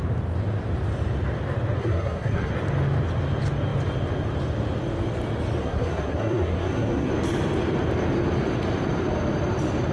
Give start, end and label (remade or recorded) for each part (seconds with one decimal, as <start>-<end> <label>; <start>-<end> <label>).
0.0-1.8 recorded; 1.8-2.5 remade; 2.5-5.6 recorded; 5.6-7.1 remade; 7.1-9.9 recorded